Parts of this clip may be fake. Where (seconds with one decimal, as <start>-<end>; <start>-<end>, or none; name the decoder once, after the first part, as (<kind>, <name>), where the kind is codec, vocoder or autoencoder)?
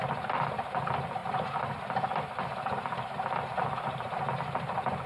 none